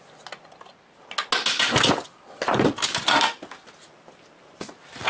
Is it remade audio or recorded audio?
recorded